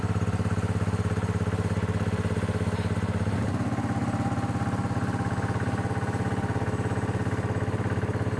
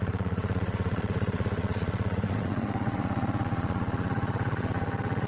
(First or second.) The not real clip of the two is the second